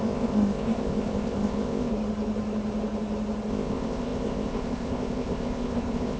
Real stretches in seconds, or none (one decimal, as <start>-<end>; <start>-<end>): 1.9-3.5